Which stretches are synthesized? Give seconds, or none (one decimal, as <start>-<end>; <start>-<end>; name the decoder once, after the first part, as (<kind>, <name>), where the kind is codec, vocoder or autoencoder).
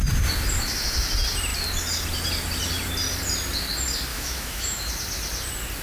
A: 4.1-4.9 (autoencoder, DAC-VAE)